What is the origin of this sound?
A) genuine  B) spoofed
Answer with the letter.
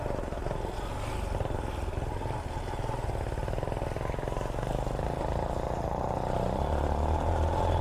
A